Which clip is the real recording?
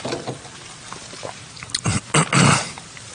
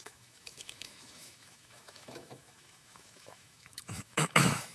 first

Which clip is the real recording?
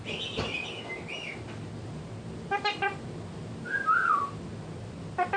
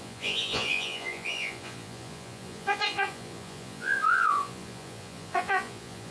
first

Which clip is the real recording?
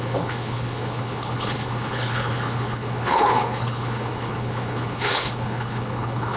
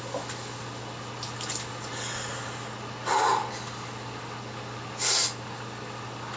second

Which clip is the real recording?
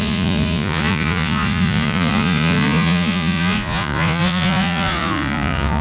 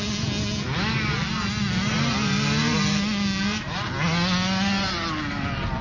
second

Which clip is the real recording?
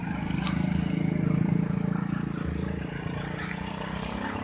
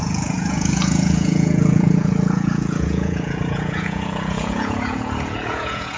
first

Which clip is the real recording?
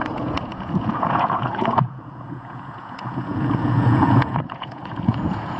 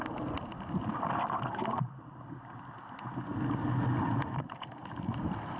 second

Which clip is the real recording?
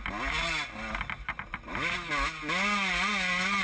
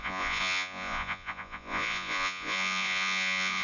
first